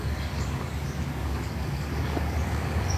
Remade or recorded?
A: remade